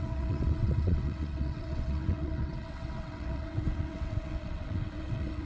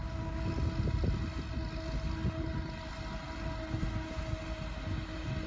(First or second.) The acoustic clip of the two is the second